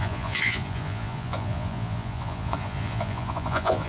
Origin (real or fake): fake